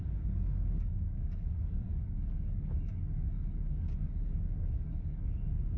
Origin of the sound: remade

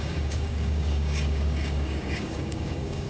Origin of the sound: remade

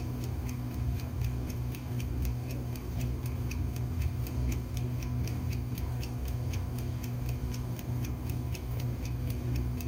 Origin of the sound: remade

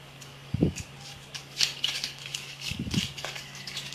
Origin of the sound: remade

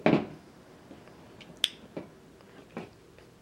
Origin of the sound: recorded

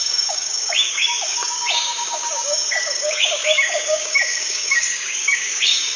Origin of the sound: remade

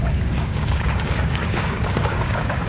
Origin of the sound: remade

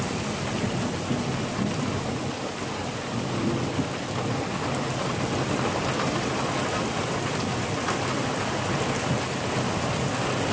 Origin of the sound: recorded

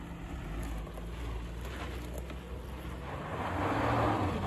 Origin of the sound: recorded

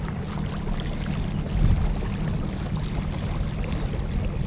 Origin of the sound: recorded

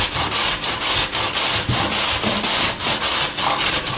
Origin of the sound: recorded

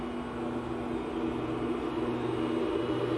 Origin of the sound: recorded